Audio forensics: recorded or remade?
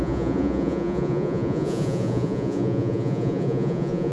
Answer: remade